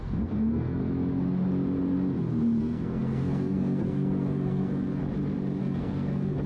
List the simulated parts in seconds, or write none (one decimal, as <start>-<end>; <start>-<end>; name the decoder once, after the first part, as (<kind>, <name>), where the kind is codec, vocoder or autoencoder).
0.0-0.8 (codec, SNAC); 2.6-5.0; 5.6-6.5